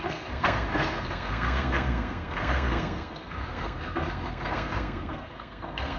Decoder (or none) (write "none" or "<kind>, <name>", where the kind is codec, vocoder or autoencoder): codec, SNAC